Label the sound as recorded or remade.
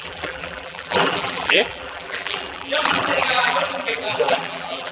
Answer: remade